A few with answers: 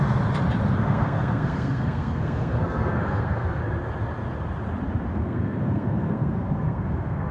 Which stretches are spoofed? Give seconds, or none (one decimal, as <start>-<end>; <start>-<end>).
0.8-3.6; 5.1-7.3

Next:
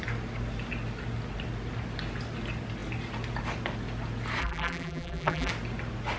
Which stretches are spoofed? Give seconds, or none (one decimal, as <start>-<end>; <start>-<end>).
4.4-5.5

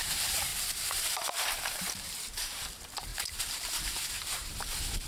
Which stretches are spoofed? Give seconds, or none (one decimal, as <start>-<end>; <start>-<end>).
0.0-5.1

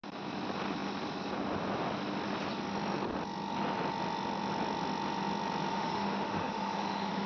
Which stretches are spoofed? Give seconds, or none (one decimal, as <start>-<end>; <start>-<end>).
5.7-7.3